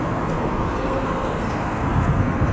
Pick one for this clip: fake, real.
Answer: fake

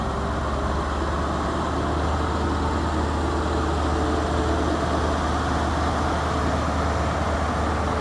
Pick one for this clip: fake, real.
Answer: real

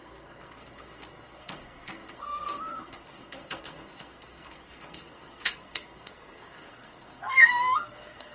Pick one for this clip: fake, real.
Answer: fake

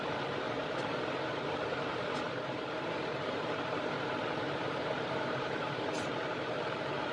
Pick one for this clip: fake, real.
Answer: fake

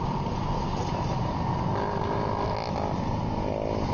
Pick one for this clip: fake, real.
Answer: fake